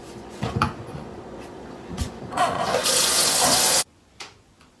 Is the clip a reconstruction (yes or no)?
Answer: yes